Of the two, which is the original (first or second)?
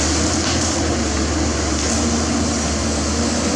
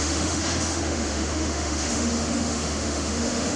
first